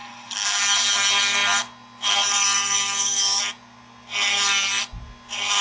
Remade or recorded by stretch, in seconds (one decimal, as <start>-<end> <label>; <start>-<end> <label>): 0.0-0.6 remade; 0.6-5.6 recorded